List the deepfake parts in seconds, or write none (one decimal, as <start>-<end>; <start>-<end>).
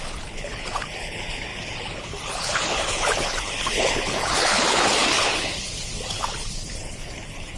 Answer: 0.0-7.6